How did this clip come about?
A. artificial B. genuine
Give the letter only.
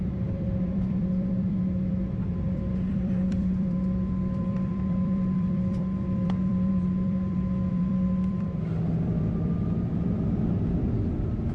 A